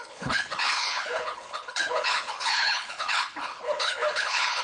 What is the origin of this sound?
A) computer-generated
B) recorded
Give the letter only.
A